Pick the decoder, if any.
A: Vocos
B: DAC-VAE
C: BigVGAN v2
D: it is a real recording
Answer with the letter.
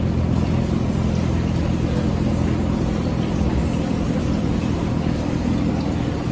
D